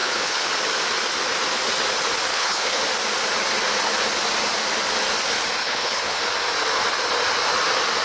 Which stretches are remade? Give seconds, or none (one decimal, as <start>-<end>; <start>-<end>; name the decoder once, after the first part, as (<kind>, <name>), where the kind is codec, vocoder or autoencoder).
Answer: 0.0-0.5 (codec, HILCodec); 2.3-2.8; 5.6-6.2